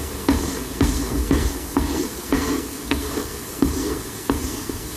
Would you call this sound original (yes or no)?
no